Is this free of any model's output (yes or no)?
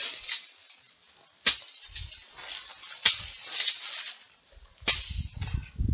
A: yes